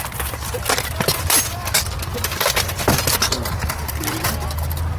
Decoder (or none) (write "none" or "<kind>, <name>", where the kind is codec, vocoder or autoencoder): none